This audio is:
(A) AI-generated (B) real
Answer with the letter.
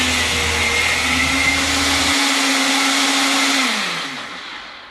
B